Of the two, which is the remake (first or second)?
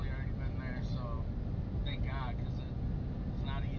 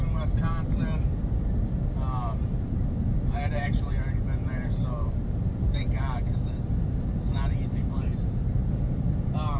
second